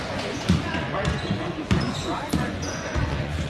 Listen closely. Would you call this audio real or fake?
fake